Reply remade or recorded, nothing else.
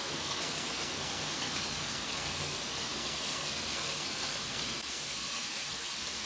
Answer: remade